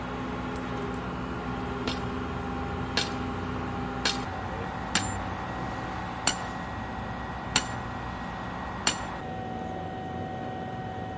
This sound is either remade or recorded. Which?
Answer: recorded